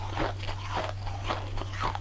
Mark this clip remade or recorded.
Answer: recorded